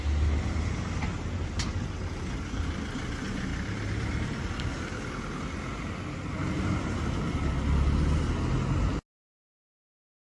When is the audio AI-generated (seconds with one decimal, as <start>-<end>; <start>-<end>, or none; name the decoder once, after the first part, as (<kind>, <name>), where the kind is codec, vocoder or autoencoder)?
1.1-1.7 (vocoder, BigVGAN v2); 3.5-4.5